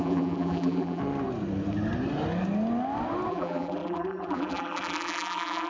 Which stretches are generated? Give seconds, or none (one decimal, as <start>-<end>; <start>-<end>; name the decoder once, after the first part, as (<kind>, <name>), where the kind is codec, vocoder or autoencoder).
0.0-1.0 (vocoder, BigVGAN v2); 3.3-5.7